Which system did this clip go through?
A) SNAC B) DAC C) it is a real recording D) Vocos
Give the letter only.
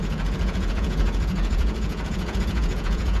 D